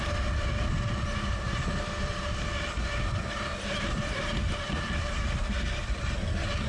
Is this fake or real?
real